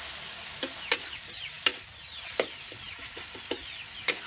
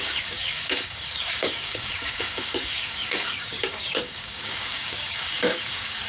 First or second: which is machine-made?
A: second